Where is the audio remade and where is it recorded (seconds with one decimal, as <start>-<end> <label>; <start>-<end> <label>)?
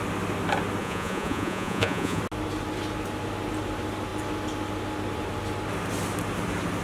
0.0-0.8 recorded; 0.8-2.2 remade; 2.2-6.8 recorded